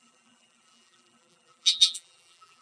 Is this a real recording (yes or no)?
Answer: no